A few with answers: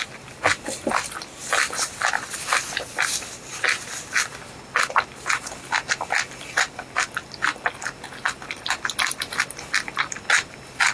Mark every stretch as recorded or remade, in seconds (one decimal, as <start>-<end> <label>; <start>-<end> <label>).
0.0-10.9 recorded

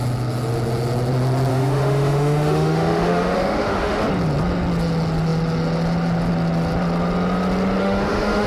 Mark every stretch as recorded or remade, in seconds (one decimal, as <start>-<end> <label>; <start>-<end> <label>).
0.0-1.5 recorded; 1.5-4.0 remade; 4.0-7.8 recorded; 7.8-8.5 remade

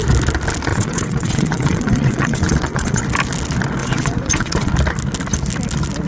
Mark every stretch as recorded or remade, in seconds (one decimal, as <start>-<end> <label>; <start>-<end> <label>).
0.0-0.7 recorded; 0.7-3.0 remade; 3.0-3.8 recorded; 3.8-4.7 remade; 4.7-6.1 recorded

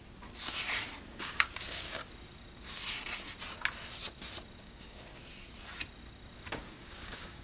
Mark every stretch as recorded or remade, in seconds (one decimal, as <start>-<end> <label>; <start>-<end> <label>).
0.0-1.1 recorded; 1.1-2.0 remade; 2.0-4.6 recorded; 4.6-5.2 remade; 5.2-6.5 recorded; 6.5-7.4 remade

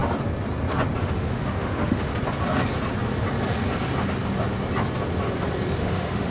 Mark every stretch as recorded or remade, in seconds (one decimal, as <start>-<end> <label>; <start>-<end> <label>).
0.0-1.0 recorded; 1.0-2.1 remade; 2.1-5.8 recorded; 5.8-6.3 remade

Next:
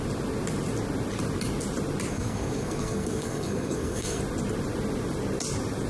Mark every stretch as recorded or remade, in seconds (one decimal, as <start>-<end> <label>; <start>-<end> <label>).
0.0-2.1 recorded; 2.1-4.2 remade; 4.2-5.9 recorded

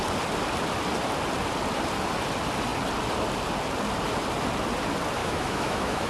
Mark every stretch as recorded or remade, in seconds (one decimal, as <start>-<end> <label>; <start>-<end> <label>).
0.0-5.2 recorded; 5.2-6.1 remade

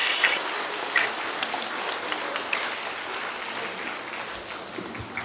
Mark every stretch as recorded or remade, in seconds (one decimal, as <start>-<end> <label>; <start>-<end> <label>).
0.0-5.2 recorded